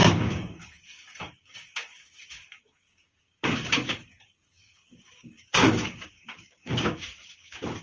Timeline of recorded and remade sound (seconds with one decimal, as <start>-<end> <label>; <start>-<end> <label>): 0.0-7.8 remade